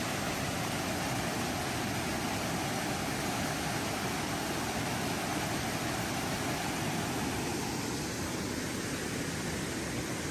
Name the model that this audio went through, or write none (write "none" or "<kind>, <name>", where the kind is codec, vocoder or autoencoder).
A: none